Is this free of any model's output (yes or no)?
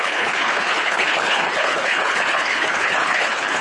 no